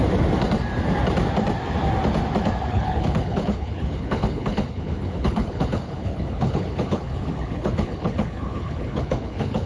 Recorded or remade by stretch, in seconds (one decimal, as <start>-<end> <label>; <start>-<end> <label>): 0.0-2.7 recorded; 2.7-9.7 remade

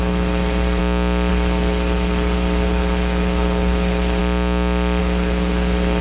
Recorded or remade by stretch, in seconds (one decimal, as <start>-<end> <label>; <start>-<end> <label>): 0.0-0.8 remade; 0.8-1.3 recorded; 1.3-4.2 remade; 4.2-5.0 recorded; 5.0-6.0 remade

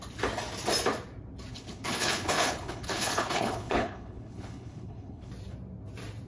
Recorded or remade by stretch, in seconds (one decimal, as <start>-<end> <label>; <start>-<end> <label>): 0.0-1.5 recorded; 1.5-5.3 remade; 5.3-6.3 recorded

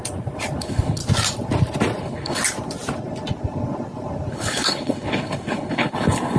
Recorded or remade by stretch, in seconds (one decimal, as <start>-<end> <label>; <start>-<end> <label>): 0.0-0.6 recorded; 0.6-1.0 remade; 1.0-2.0 recorded; 2.0-2.4 remade; 2.4-4.3 recorded; 4.3-6.4 remade